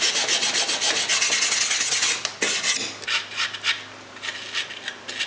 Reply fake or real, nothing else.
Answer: real